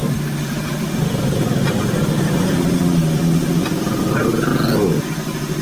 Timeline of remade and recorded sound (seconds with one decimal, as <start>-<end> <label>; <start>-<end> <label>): 0.0-2.8 remade; 2.8-5.6 recorded